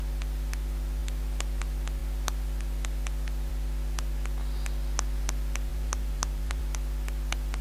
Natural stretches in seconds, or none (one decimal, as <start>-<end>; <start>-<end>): 0.0-5.7; 6.6-7.6